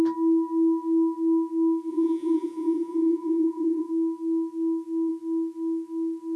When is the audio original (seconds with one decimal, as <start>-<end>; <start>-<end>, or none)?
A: 0.0-1.9; 3.9-6.4